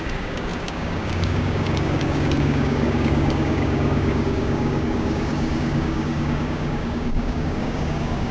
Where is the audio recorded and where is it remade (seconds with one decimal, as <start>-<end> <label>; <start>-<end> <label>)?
0.0-8.3 remade